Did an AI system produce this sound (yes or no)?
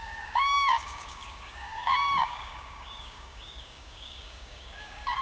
yes